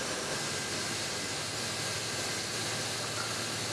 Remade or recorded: recorded